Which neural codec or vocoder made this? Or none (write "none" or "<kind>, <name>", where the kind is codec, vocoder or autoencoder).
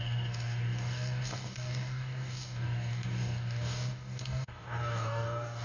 codec, DAC